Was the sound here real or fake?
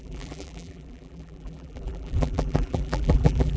fake